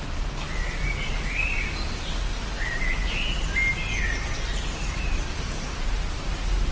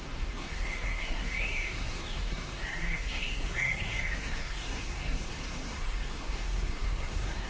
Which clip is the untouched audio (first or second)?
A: first